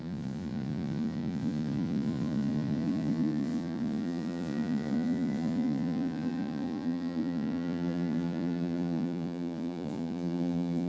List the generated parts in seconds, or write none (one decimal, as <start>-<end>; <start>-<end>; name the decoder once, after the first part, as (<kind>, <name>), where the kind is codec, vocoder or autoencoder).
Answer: 0.0-10.9 (vocoder, Vocos)